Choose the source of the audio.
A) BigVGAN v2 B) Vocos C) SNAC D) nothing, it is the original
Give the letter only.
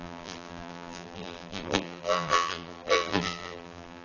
A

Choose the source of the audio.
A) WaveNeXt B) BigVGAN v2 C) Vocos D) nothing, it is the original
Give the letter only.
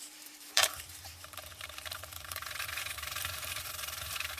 B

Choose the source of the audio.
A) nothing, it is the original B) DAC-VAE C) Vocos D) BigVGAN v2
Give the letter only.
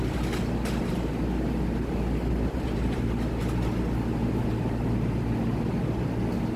A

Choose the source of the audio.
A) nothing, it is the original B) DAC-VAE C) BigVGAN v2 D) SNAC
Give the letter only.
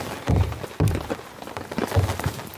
A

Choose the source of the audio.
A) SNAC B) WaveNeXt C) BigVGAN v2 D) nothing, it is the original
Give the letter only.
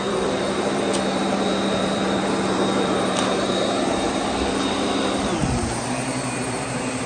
C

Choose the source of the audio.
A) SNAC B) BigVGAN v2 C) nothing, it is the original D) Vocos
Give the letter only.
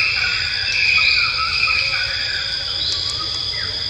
C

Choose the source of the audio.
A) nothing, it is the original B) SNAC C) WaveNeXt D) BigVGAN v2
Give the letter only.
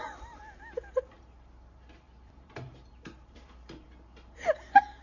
D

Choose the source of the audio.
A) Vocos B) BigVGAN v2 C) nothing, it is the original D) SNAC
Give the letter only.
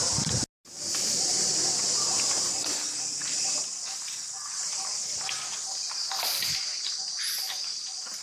C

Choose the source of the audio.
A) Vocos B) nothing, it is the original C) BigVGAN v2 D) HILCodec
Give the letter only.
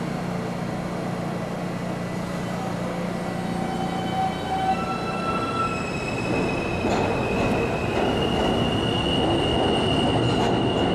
B